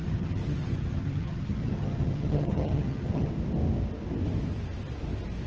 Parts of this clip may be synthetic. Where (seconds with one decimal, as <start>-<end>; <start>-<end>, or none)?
0.0-3.3